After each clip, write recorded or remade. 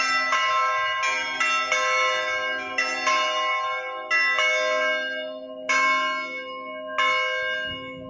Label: recorded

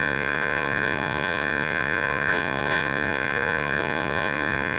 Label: remade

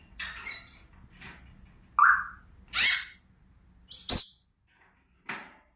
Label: recorded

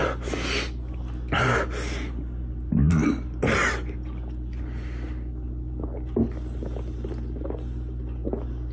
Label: recorded